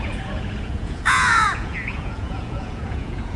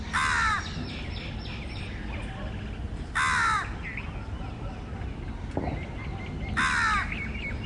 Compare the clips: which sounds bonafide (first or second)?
second